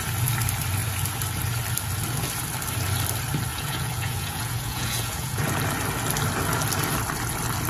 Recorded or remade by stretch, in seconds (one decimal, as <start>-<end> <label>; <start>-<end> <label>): 0.0-3.5 recorded; 3.5-5.4 remade; 5.4-7.7 recorded